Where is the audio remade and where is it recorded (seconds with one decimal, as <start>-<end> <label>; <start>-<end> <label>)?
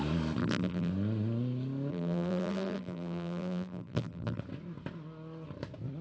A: 0.0-0.4 recorded; 0.4-0.9 remade; 0.9-1.9 recorded; 1.9-4.4 remade; 4.4-6.0 recorded